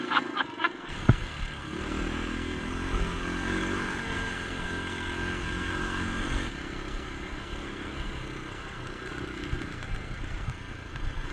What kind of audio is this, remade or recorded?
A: remade